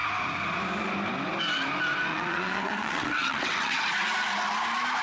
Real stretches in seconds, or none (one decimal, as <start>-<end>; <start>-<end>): 0.0-2.1; 3.8-5.0